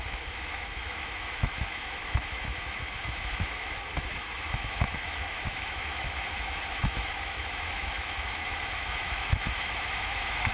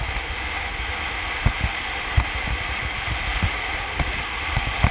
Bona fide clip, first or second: second